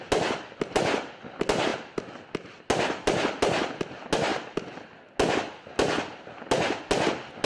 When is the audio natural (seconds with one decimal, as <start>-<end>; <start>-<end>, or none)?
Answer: 0.0-7.5